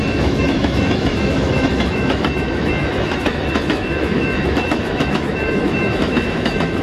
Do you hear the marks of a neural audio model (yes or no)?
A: yes